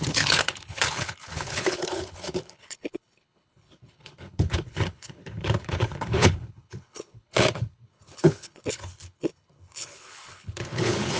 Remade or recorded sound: remade